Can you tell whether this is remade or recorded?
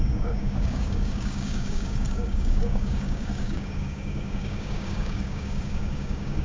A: remade